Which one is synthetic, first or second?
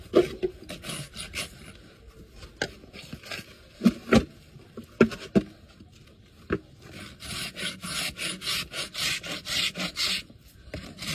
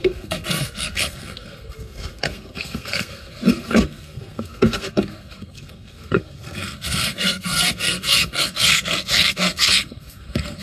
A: second